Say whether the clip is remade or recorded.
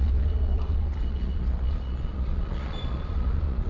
remade